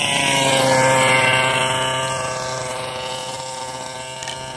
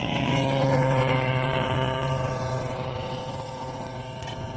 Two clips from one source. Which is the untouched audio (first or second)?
first